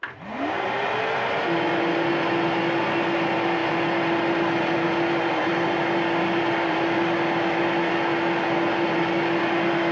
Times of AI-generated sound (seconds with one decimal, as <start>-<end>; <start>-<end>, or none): none